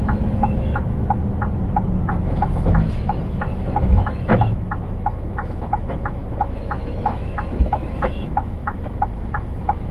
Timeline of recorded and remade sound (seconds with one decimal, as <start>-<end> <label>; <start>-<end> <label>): 0.0-1.2 remade; 1.2-2.2 recorded; 2.2-9.9 remade